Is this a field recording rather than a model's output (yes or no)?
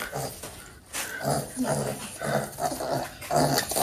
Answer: yes